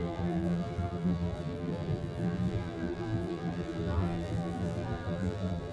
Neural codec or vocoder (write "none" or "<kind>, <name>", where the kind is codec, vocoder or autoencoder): vocoder, BigVGAN v2